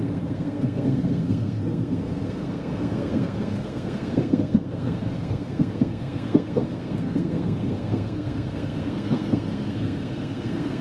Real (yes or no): no